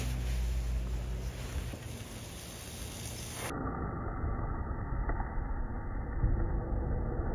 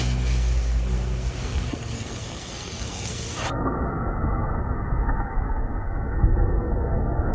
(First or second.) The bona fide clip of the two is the first